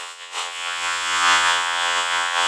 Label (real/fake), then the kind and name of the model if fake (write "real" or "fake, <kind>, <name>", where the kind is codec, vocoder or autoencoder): fake, vocoder, WaveNeXt